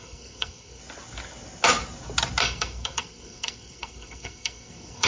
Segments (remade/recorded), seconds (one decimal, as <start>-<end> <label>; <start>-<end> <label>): 0.0-0.8 remade; 0.8-2.4 recorded; 2.4-5.1 remade